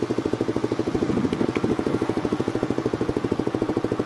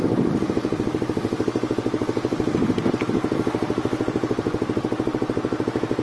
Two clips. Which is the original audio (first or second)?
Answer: second